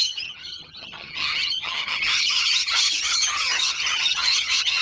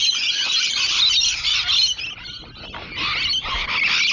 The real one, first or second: second